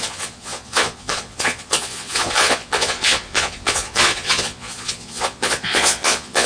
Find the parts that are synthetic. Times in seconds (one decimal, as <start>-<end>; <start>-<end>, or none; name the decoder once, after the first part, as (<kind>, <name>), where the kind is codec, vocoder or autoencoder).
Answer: 0.0-6.5 (vocoder, Vocos)